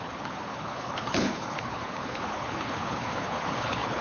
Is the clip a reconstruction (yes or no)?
yes